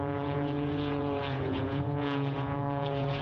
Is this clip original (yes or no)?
no